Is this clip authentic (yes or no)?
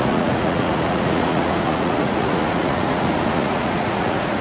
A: no